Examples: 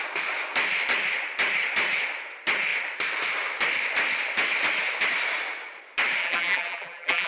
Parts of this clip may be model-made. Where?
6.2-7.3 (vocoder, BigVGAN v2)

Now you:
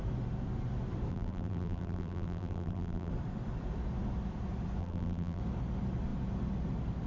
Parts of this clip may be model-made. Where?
1.1-3.1 (vocoder, BigVGAN v2); 4.8-5.4

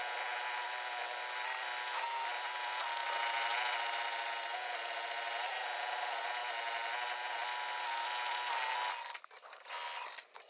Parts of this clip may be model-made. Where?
0.0-6.4 (vocoder, BigVGAN v2); 9.8-10.5